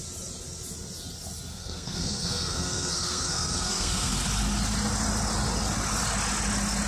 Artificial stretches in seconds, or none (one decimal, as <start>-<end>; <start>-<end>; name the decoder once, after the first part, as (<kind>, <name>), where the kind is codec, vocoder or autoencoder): 1.5-4.1 (codec, SNAC)